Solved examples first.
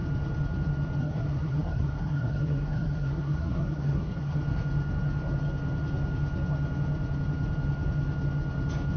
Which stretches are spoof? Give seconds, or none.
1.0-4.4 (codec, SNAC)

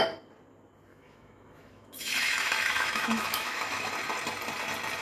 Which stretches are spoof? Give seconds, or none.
0.9-3.9 (autoencoder, DAC-VAE)